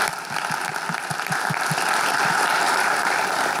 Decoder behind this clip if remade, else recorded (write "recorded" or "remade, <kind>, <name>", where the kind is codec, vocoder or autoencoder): recorded